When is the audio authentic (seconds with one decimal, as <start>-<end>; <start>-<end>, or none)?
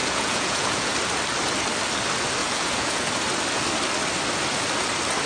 0.9-2.4; 3.1-5.3